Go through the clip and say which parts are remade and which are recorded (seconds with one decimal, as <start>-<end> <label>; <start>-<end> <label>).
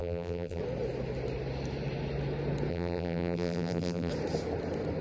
0.0-0.6 remade; 0.6-2.7 recorded; 2.7-4.1 remade; 4.1-5.0 recorded